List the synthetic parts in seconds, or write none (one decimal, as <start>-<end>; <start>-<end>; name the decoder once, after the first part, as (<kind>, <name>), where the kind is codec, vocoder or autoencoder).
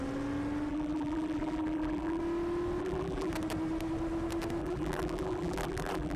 0.7-2.2 (vocoder, BigVGAN v2); 2.8-3.3; 4.6-6.2